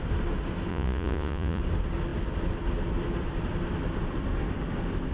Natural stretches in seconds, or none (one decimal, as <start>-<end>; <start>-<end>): 0.0-0.7; 1.6-5.1